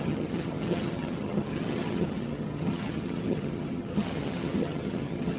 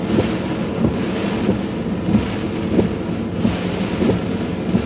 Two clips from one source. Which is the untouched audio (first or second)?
second